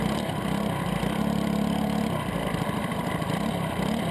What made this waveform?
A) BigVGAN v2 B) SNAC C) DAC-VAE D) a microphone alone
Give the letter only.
A